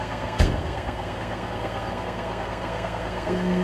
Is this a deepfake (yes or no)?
yes